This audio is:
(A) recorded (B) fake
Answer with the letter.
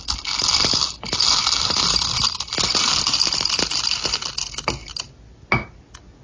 A